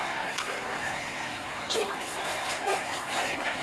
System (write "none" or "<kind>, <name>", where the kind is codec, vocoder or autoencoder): codec, SNAC